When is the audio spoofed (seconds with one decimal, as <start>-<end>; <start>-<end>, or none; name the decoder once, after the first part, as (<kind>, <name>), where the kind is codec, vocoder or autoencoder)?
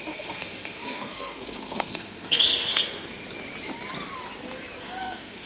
0.0-3.2 (codec, SNAC); 4.8-5.5